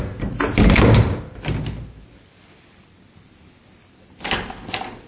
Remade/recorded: recorded